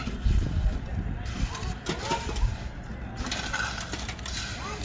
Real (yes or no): yes